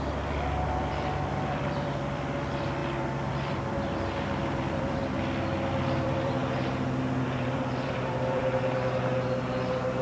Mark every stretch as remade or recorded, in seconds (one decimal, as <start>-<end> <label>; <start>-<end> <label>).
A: 0.0-5.0 remade; 5.0-5.7 recorded; 5.7-6.4 remade; 6.4-7.2 recorded; 7.2-8.4 remade; 8.4-10.0 recorded